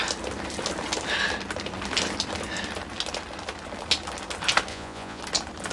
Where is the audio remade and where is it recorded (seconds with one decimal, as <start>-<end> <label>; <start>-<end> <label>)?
0.0-4.7 recorded; 4.7-5.2 remade; 5.2-5.7 recorded